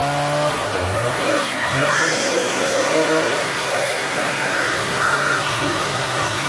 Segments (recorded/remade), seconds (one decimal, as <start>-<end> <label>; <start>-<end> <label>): 0.0-0.5 recorded; 0.5-6.5 remade